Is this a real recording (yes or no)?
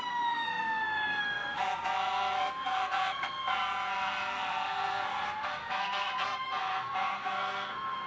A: no